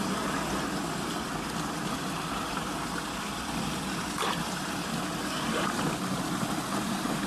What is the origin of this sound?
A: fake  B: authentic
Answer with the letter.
B